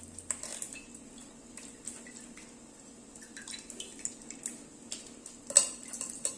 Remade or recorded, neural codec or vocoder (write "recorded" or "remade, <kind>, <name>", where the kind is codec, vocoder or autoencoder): recorded